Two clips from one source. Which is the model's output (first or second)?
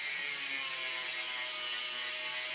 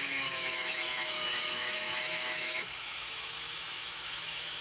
second